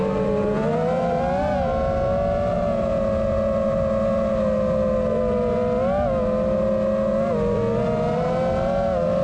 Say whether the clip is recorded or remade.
recorded